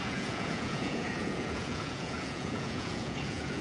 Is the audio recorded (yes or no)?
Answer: no